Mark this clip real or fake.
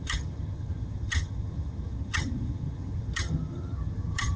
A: fake